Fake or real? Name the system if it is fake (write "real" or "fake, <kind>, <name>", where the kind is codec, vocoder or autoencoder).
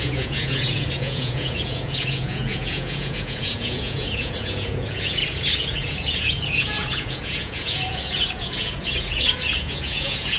fake, vocoder, Vocos